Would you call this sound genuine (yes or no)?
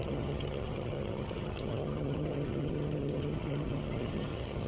no